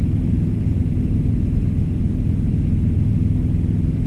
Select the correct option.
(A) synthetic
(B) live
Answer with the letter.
B